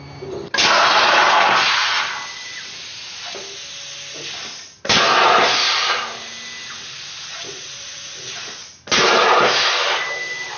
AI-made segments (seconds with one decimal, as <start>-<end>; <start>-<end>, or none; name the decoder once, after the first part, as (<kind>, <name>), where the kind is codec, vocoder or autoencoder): 7.3-8.7 (vocoder, Vocos)